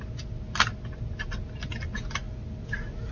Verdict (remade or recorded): recorded